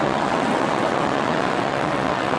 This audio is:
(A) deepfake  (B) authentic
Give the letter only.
A